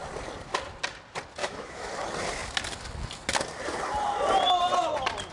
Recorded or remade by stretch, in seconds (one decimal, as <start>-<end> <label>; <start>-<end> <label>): 0.0-1.4 recorded; 1.4-1.9 remade; 1.9-5.3 recorded